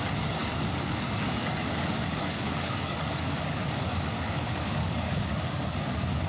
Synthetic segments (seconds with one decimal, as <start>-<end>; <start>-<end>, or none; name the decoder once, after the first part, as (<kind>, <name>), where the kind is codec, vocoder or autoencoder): 0.0-6.3 (codec, DAC)